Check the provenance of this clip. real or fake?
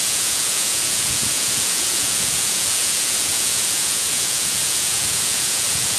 fake